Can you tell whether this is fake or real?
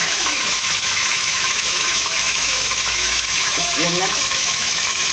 fake